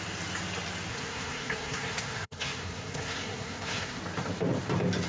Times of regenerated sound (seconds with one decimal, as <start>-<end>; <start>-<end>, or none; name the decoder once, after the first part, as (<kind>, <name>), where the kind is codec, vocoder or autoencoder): 0.9-4.0 (codec, SNAC)